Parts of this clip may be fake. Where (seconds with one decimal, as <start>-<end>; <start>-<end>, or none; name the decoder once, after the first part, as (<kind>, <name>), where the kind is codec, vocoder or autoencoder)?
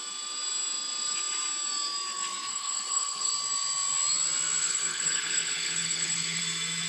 2.5-3.3 (codec, HILCodec); 4.6-6.4